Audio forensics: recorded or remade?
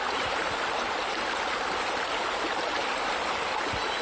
recorded